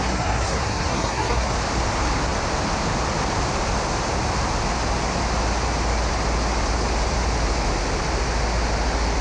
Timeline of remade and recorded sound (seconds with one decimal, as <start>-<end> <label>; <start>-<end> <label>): 0.0-1.5 remade; 1.5-9.2 recorded